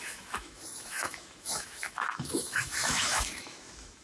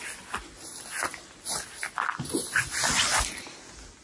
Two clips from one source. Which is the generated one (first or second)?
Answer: first